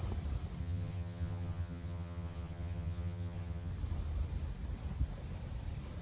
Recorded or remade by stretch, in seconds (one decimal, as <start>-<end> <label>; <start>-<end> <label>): 0.0-0.6 recorded; 0.6-3.7 remade; 3.7-6.0 recorded